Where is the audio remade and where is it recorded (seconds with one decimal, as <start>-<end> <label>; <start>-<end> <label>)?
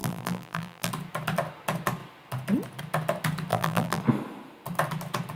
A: 0.0-0.9 remade; 0.9-3.5 recorded; 3.5-4.0 remade; 4.0-5.4 recorded